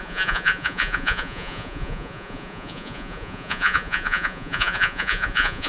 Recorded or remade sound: remade